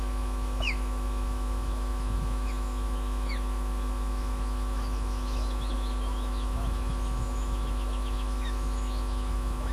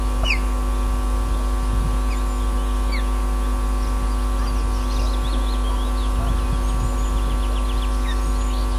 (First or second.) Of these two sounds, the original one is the second